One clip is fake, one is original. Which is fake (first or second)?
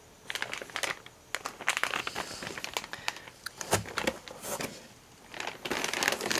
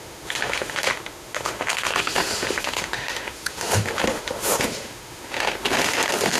second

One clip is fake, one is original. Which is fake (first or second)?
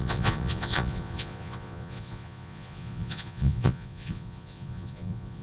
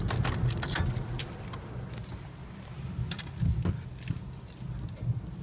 first